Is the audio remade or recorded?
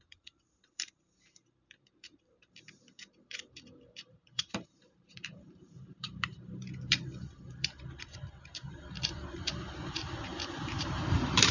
remade